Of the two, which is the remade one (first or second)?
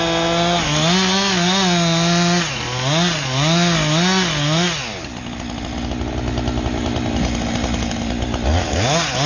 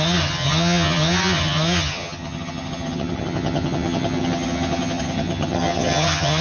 second